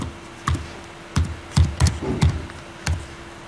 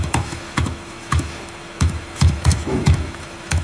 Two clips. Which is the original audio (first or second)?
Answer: first